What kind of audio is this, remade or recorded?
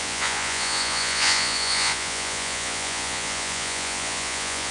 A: remade